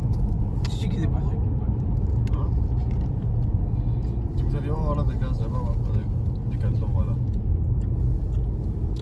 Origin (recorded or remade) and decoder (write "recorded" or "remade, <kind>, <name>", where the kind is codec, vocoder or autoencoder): recorded